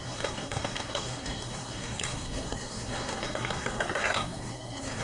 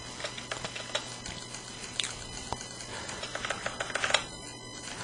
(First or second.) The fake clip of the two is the first